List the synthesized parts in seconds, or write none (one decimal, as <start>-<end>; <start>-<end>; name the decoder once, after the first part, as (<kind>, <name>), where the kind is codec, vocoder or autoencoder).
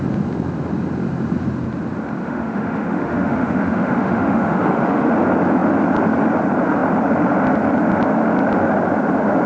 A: 2.2-5.1 (autoencoder, DAC-VAE)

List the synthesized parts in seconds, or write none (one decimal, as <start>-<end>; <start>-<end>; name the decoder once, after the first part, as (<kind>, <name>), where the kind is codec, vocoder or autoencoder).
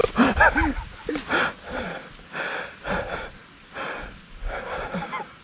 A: 0.0-1.5 (vocoder, BigVGAN v2)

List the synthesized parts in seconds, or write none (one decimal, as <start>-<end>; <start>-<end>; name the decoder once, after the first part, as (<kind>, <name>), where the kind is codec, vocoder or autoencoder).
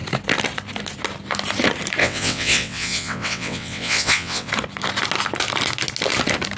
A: 2.0-4.5 (vocoder, WaveNeXt)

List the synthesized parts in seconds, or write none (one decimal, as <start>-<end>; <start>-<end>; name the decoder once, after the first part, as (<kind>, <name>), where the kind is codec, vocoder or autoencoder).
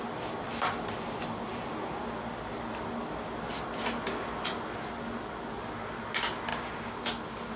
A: 1.5-2.0 (vocoder, BigVGAN v2)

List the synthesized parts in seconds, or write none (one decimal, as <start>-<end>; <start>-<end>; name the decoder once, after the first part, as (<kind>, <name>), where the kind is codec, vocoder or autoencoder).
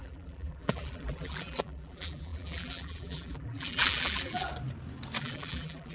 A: 0.0-4.5 (vocoder, BigVGAN v2); 5.2-5.9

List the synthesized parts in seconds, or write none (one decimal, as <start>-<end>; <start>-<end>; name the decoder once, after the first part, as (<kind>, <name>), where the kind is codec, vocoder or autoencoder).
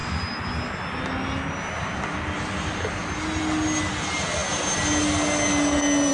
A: none